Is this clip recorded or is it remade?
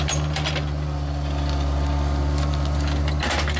recorded